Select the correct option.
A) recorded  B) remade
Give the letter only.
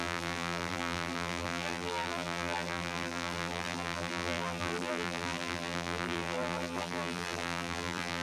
B